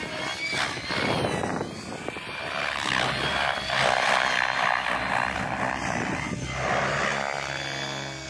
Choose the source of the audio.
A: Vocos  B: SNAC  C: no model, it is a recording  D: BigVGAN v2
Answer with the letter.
C